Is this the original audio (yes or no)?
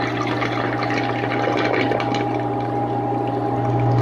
yes